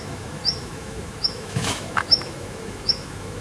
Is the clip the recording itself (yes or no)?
no